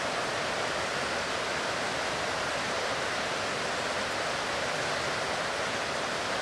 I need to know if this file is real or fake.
real